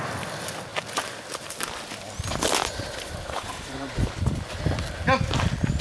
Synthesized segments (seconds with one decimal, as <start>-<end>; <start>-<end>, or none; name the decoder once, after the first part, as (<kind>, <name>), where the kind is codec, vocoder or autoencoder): 2.6-4.1 (vocoder, BigVGAN v2)